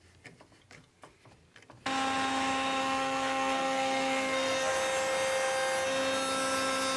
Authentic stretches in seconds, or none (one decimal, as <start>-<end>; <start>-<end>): 0.0-2.8; 4.7-7.0